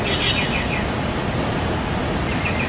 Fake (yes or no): no